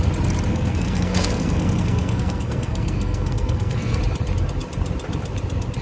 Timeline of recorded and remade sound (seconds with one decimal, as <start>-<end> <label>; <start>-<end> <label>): 0.0-0.5 recorded; 0.5-4.0 remade; 4.0-5.8 recorded